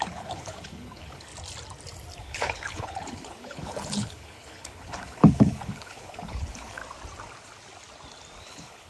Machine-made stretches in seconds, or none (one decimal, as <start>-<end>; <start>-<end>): 0.0-1.3; 2.2-6.8; 8.4-8.9